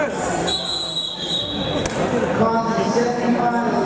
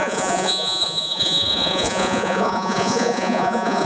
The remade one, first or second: second